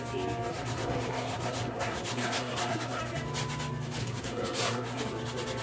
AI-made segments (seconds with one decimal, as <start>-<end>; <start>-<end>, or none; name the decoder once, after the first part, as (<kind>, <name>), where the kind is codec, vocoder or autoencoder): 0.5-3.0 (codec, SNAC); 4.0-5.0